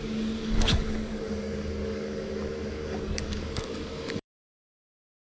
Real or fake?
fake